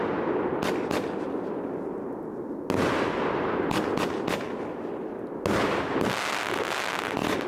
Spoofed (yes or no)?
no